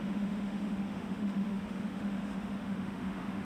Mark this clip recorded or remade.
remade